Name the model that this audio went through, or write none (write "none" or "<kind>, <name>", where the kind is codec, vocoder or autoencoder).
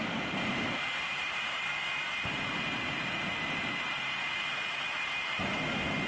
vocoder, BigVGAN v2